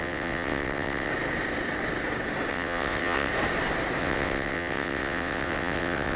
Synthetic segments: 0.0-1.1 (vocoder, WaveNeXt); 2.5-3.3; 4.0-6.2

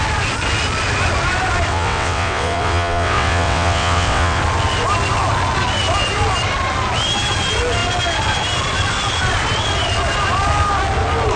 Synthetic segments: 1.7-4.4 (vocoder, WaveNeXt)

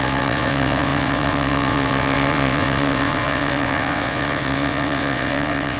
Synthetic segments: 0.0-5.8 (vocoder, WaveNeXt)

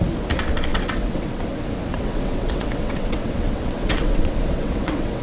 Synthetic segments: 0.7-1.4 (vocoder, WaveNeXt); 1.9-5.2

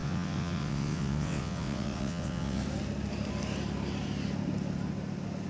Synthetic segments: 0.0-2.6 (vocoder, WaveNeXt)

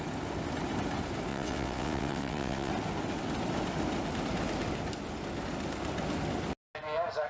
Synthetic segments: 1.3-2.7 (vocoder, WaveNeXt)

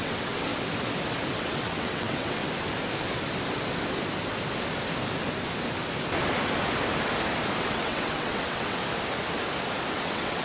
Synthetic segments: 0.0-0.5 (vocoder, WaveNeXt); 1.3-2.4; 7.6-8.8; 9.9-10.4